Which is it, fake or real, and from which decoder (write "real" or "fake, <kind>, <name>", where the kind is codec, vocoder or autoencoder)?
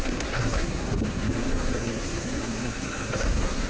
fake, codec, SNAC